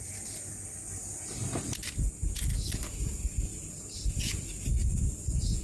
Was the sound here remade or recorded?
recorded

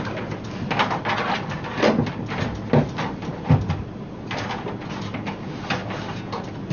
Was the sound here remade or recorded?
recorded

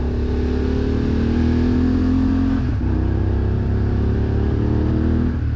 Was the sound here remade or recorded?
recorded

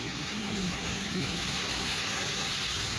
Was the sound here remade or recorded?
remade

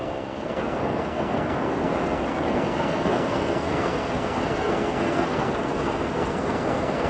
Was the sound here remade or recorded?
remade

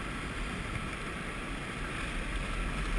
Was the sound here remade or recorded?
recorded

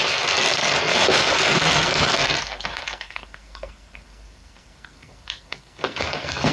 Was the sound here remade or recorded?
remade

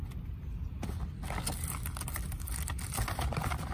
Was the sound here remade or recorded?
recorded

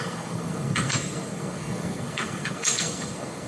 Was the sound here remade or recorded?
remade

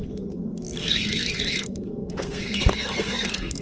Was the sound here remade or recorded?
remade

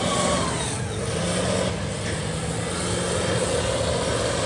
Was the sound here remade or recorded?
recorded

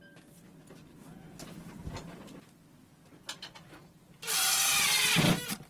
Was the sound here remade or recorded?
recorded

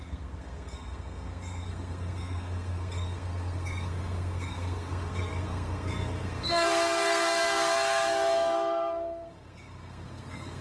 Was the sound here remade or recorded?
remade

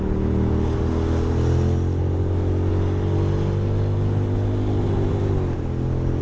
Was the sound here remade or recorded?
recorded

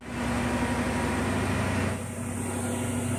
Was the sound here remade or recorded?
recorded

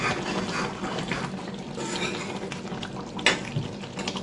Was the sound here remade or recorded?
recorded